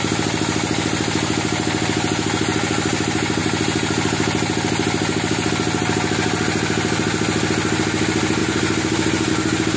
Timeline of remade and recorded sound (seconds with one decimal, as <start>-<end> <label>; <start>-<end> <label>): 0.0-8.4 recorded; 8.4-9.3 remade; 9.3-9.8 recorded

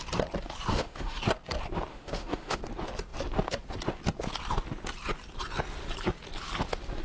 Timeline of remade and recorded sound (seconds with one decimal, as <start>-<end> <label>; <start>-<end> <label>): 0.0-0.7 recorded; 0.7-1.2 remade; 1.2-1.9 recorded; 1.9-2.6 remade; 2.6-7.0 recorded

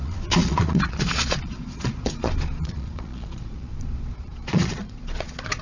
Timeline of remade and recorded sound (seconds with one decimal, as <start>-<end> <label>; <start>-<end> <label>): 0.0-5.6 remade

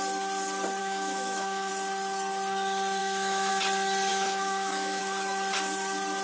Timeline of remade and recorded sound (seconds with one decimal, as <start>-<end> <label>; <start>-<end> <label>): 0.0-0.8 recorded; 0.8-1.7 remade; 1.7-3.0 recorded; 3.0-3.5 remade; 3.5-4.1 recorded; 4.1-5.0 remade; 5.0-6.2 recorded